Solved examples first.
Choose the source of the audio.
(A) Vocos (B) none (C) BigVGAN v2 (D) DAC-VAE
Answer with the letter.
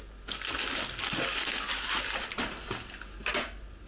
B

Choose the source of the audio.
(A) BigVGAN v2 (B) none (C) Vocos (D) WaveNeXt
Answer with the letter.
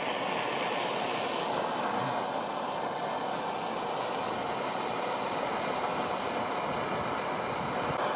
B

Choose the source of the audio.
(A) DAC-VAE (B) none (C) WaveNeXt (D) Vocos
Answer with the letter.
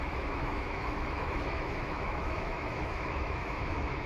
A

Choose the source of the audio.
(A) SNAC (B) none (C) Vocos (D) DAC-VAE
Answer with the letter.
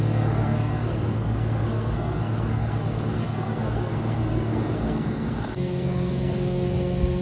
A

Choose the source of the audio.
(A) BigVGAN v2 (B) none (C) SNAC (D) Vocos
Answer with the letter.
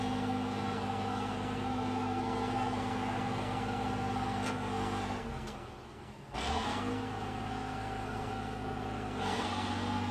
C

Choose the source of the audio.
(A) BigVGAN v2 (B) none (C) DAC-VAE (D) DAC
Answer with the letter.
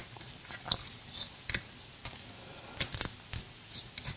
B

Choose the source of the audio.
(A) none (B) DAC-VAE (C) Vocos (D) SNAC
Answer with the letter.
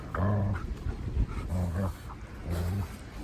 A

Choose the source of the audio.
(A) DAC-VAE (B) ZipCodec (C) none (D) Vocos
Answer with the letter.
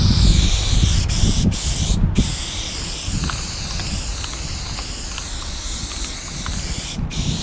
C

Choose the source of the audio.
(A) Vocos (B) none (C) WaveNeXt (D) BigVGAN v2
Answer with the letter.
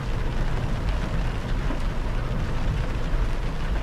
B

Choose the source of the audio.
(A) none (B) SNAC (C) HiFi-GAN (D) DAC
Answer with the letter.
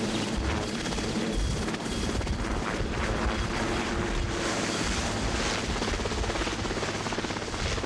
A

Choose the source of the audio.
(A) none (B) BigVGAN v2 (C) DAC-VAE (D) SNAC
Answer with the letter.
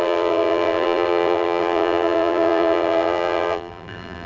B